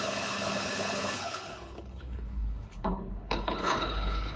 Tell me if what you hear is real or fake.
fake